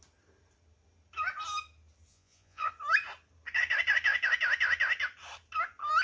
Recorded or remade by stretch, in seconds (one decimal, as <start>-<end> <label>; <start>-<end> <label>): 0.0-2.1 recorded; 2.1-2.7 remade; 2.7-6.0 recorded

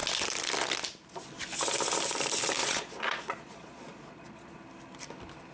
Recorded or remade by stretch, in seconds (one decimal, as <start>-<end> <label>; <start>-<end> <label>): 0.0-2.6 recorded; 2.6-4.6 remade; 4.6-5.5 recorded

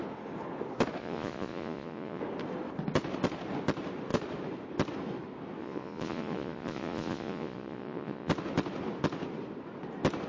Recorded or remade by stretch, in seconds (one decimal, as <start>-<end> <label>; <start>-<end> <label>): 0.0-1.0 recorded; 1.0-2.2 remade; 2.2-5.6 recorded; 5.6-8.3 remade; 8.3-10.3 recorded

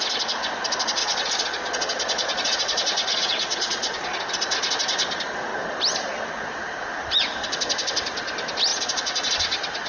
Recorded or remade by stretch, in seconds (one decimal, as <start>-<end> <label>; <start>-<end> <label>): 0.0-1.0 recorded; 1.0-4.2 remade; 4.2-8.7 recorded; 8.7-9.3 remade; 9.3-9.9 recorded